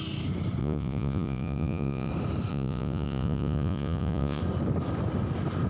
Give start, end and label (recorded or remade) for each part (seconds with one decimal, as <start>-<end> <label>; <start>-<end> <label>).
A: 0.0-0.6 recorded; 0.6-2.1 remade; 2.1-2.5 recorded; 2.5-4.4 remade; 4.4-5.7 recorded